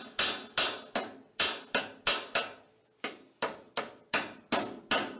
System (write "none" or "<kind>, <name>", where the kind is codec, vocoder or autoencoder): none